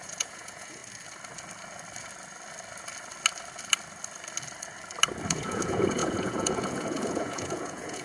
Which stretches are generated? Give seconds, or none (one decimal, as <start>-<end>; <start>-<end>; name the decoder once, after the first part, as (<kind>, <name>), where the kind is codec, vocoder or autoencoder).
0.0-0.8 (vocoder, Vocos); 5.3-8.0